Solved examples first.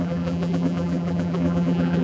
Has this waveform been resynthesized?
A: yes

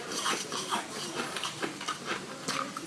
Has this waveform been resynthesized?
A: yes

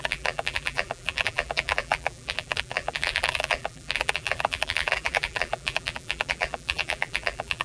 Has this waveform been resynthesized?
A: yes